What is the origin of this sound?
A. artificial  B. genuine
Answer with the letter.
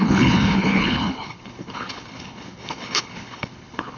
A